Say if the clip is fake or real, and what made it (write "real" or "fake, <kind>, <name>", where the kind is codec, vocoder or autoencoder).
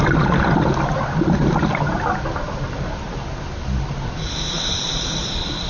real